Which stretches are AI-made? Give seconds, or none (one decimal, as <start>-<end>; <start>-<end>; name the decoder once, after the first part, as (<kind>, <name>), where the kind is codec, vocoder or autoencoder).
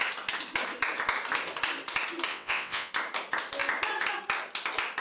2.3-2.9 (vocoder, WaveNeXt)